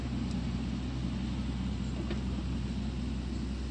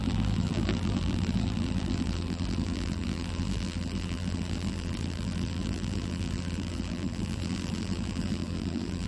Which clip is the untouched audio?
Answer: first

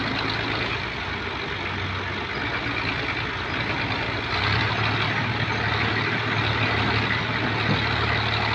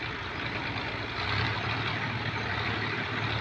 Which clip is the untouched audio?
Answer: first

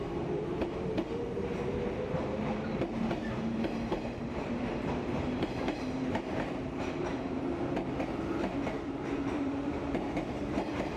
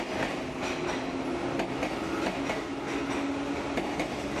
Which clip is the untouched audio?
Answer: second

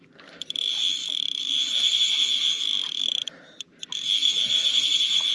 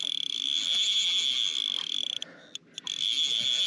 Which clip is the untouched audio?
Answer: second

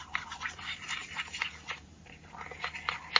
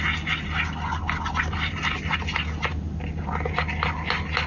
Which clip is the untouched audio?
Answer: second